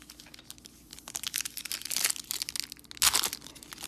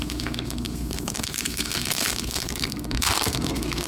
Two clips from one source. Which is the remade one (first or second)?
second